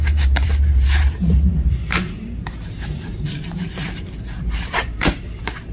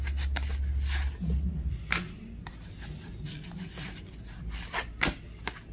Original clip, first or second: second